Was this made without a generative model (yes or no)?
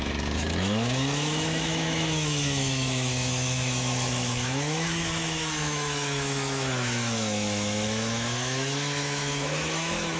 no